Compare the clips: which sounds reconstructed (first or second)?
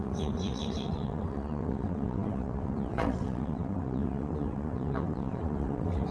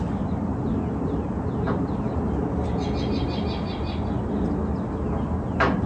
first